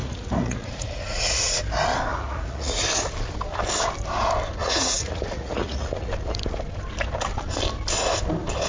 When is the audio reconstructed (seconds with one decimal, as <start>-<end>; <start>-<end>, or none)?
0.0-1.6; 2.1-2.8; 4.6-6.1